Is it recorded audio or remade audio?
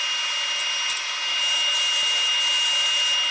recorded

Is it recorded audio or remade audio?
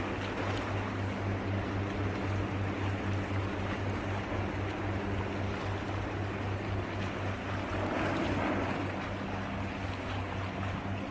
recorded